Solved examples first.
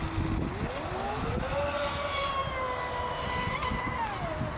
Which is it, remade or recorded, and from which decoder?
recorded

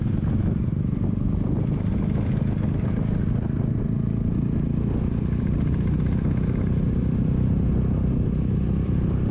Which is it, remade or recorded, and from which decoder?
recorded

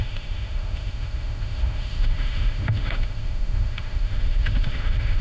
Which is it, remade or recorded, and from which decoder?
remade, autoencoder, DAC-VAE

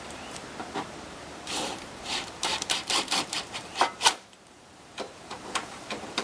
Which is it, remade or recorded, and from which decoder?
remade, vocoder, BigVGAN v2